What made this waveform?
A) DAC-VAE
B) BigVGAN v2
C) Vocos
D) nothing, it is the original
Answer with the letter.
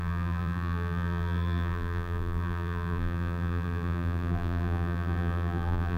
B